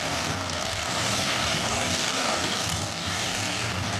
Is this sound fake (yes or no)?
yes